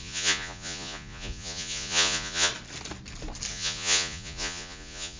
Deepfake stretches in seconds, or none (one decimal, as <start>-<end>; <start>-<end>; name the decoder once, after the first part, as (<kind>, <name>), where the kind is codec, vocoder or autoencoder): 0.0-2.5 (vocoder, Vocos); 3.5-5.2